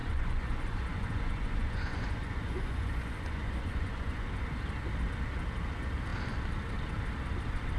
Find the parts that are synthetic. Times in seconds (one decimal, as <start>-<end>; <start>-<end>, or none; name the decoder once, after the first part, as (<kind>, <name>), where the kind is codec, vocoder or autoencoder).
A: 0.0-4.6 (vocoder, Vocos)